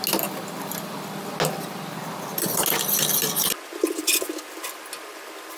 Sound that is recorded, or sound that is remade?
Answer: recorded